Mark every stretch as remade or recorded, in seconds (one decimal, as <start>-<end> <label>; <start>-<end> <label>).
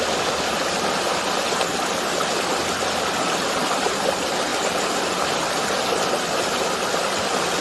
0.0-7.6 recorded